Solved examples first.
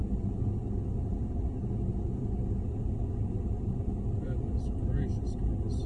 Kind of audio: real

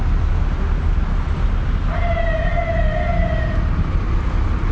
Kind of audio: real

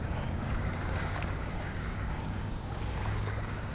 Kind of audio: fake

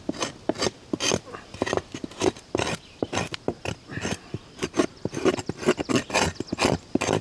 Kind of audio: real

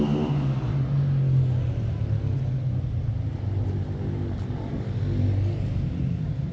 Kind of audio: real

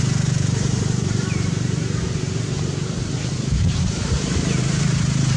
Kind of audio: fake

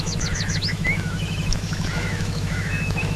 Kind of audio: fake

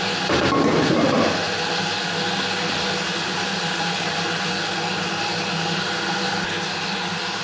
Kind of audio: real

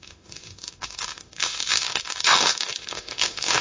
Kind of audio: fake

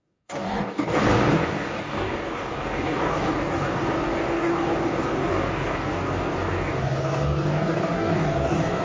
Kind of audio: fake